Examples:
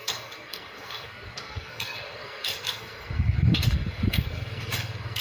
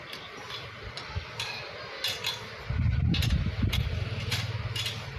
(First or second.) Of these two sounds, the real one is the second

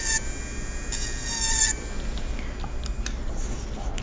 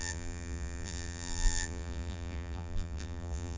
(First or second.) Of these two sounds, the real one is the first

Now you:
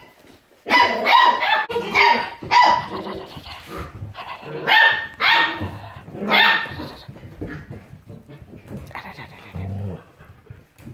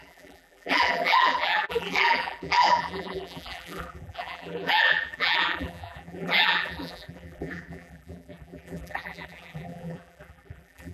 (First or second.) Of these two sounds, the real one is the first